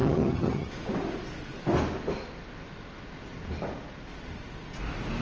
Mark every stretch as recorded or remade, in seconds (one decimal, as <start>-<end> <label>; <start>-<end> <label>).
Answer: 0.0-0.7 remade; 0.7-5.2 recorded